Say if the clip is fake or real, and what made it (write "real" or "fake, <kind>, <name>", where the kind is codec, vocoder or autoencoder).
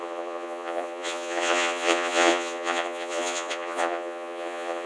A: fake, vocoder, Vocos